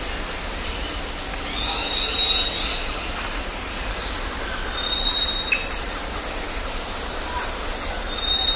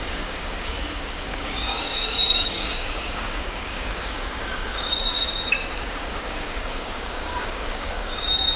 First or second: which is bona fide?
first